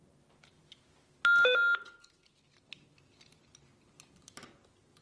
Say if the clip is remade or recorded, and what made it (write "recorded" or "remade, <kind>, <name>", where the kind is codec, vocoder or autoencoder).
recorded